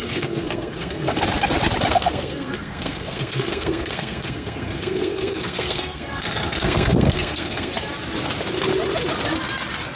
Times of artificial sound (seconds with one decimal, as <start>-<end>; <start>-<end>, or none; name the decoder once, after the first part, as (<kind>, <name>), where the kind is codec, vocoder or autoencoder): 0.0-1.1 (codec, SNAC); 1.9-7.7

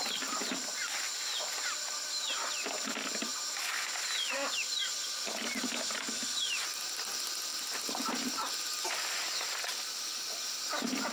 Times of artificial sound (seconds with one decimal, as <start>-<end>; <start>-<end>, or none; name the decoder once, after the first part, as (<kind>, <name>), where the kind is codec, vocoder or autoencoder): 4.8-6.0 (vocoder, BigVGAN v2)

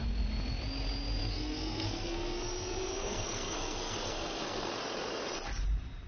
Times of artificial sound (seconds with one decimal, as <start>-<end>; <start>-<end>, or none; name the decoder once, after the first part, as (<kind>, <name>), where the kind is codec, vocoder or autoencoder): 1.2-4.7 (codec, SNAC)